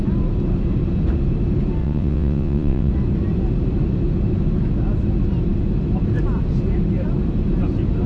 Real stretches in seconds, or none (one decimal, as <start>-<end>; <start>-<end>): 0.0-1.8; 2.9-8.1